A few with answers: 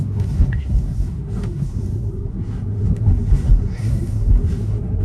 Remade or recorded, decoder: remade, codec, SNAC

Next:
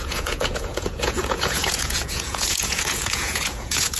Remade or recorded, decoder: remade, vocoder, Vocos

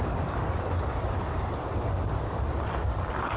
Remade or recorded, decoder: recorded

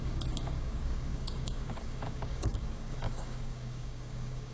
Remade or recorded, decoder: remade, codec, DAC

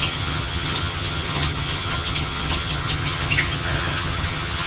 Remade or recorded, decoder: remade, vocoder, HiFi-GAN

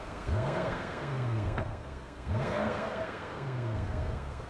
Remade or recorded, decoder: remade, codec, SNAC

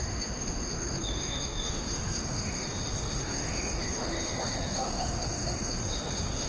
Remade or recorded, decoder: remade, autoencoder, DAC-VAE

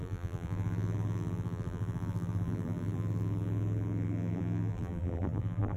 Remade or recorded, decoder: remade, vocoder, BigVGAN v2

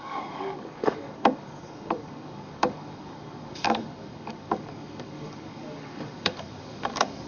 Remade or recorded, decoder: remade, codec, DAC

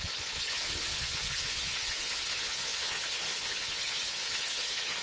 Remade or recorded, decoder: remade, vocoder, Vocos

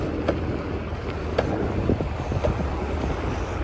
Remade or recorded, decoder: recorded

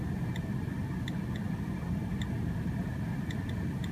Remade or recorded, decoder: recorded